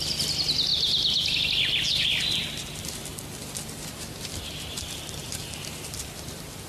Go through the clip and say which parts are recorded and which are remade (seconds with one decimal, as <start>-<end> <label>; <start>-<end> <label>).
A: 0.0-6.7 recorded

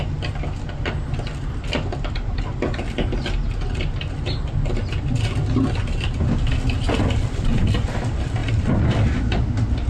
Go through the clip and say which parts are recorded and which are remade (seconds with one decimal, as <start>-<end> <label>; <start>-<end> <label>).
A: 0.0-9.9 recorded

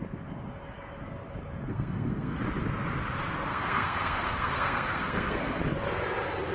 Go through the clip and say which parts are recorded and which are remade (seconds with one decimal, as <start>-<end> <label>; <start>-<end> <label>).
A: 0.0-1.7 recorded; 1.7-2.4 remade; 2.4-3.5 recorded; 3.5-5.6 remade; 5.6-6.5 recorded

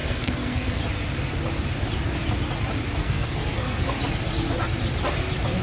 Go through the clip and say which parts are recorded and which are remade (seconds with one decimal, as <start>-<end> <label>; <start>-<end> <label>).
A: 0.0-0.8 remade; 0.8-3.0 recorded; 3.0-3.9 remade; 3.9-5.6 recorded